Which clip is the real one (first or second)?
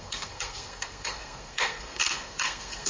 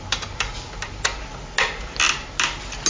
second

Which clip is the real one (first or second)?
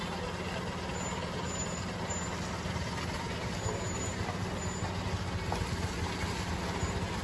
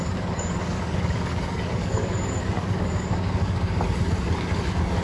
first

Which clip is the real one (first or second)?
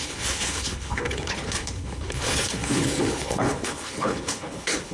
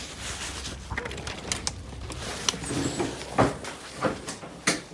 second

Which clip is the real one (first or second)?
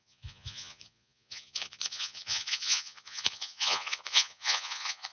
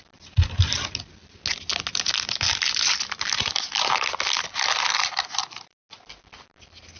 second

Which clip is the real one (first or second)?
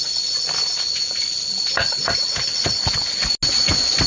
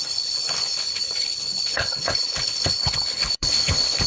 first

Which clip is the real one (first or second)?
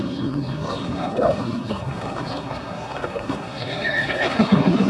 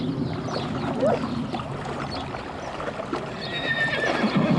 second